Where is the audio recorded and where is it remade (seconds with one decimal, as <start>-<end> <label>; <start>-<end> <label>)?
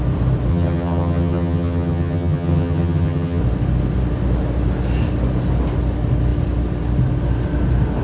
0.0-0.5 recorded; 0.5-3.4 remade; 3.4-8.0 recorded